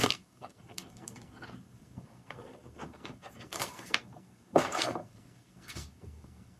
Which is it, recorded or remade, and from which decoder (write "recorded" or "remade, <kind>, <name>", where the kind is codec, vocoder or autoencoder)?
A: remade, codec, SNAC